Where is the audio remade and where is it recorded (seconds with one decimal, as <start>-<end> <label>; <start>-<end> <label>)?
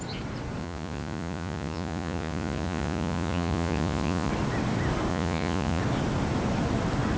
0.0-0.6 recorded; 0.6-4.3 remade; 4.3-5.1 recorded; 5.1-5.8 remade; 5.8-7.2 recorded